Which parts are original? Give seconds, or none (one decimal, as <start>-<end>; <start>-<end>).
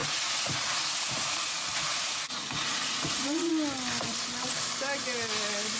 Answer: 3.5-5.8